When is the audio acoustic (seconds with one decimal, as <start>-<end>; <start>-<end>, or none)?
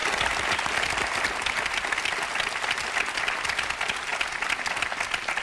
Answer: 0.0-5.4